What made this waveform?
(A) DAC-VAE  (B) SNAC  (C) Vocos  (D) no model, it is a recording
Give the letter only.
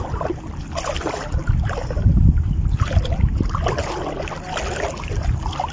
D